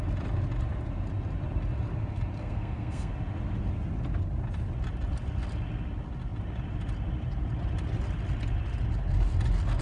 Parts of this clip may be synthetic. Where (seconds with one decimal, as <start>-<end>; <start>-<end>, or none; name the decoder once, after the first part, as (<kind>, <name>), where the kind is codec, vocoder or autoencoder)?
2.4-3.1 (codec, SNAC)